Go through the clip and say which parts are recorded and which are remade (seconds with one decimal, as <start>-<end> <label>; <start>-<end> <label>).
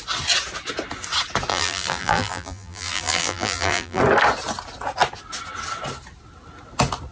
0.0-1.5 recorded; 1.5-4.0 remade; 4.0-7.1 recorded